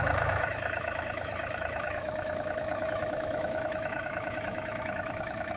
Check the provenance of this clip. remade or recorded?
remade